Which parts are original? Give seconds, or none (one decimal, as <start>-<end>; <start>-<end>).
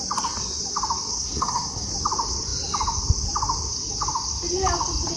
0.0-1.1; 1.9-5.2